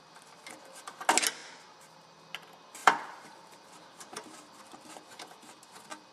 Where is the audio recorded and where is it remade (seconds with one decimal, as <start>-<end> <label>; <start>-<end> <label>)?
0.0-1.4 recorded; 1.4-2.2 remade; 2.2-2.8 recorded; 2.8-4.6 remade; 4.6-6.1 recorded